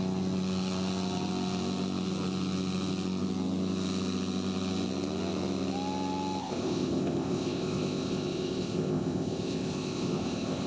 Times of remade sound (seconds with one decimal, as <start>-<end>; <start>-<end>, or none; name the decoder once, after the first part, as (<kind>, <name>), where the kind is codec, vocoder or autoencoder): 6.4-10.7 (codec, ZipCodec)